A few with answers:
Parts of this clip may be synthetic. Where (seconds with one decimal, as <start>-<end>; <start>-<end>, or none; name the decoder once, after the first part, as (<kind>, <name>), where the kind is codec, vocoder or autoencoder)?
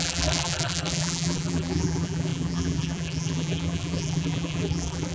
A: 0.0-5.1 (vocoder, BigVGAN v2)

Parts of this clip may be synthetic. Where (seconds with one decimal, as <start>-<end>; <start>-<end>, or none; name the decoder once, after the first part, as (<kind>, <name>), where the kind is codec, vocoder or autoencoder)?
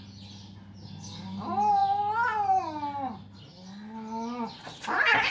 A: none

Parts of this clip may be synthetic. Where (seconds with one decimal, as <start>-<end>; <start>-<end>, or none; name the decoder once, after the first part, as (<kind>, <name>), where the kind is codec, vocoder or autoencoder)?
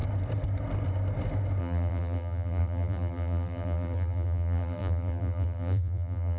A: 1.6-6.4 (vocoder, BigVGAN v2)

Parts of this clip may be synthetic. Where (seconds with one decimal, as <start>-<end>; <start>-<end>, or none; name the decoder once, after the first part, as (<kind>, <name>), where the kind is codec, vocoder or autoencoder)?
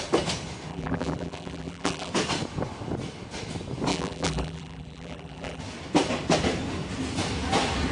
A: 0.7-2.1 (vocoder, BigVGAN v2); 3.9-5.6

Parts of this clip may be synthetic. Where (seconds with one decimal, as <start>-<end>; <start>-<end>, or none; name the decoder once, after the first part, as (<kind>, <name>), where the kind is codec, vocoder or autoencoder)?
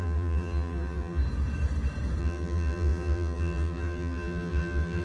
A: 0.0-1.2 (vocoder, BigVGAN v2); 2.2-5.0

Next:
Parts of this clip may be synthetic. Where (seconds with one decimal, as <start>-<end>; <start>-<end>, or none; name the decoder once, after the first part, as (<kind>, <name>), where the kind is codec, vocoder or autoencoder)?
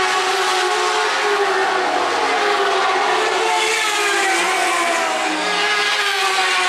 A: none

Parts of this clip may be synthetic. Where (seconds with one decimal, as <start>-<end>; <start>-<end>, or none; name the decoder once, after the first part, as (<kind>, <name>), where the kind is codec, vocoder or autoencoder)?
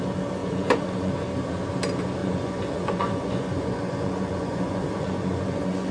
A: 0.4-1.1 (vocoder, Vocos); 2.2-5.9